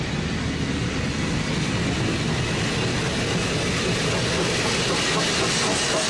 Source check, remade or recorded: recorded